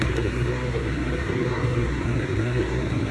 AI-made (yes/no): yes